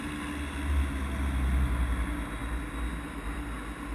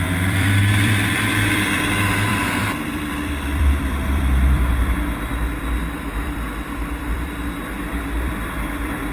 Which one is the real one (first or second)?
first